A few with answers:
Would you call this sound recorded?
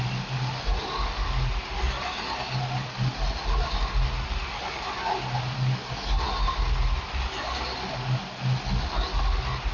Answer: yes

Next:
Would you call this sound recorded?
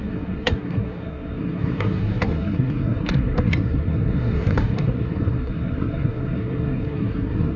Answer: no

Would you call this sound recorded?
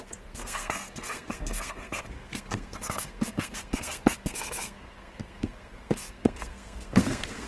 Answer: no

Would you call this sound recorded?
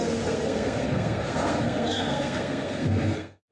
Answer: no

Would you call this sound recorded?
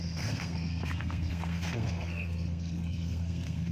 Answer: no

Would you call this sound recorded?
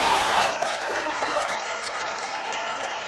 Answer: no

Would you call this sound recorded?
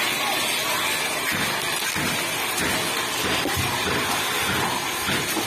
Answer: yes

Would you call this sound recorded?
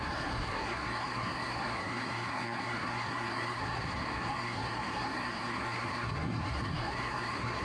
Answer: no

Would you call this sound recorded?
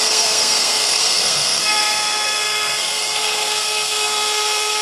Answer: no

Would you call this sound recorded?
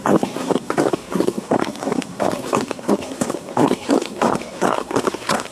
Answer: no